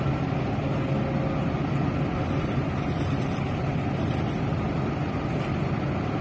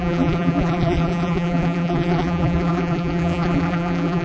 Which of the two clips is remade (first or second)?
second